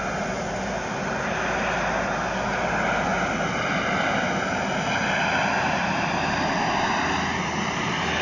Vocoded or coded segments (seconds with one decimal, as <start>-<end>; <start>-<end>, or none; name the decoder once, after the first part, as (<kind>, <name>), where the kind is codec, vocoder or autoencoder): none